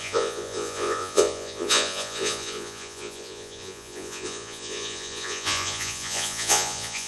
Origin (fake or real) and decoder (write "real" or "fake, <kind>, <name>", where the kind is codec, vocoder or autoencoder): fake, vocoder, Vocos